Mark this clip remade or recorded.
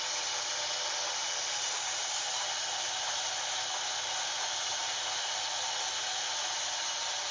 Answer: recorded